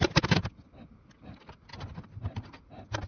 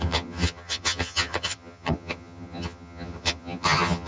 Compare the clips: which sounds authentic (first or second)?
first